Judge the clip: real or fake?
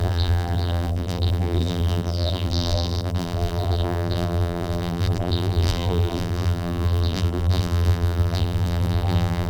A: fake